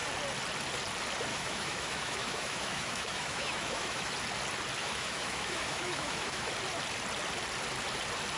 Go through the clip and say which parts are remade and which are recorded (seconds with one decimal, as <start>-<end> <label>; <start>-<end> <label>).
0.0-1.3 recorded; 1.3-4.1 remade; 4.1-4.8 recorded; 4.8-6.5 remade; 6.5-8.4 recorded